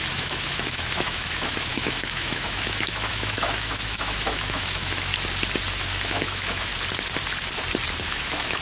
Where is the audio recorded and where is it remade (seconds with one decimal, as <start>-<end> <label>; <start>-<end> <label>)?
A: 0.0-5.1 remade; 5.1-5.7 recorded; 5.7-6.7 remade; 6.7-8.0 recorded; 8.0-8.6 remade